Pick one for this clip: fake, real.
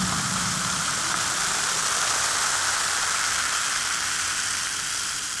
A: fake